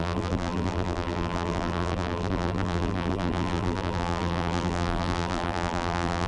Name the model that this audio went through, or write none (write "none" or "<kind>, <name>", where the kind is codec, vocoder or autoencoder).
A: vocoder, BigVGAN v2